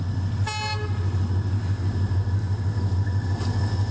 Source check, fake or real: real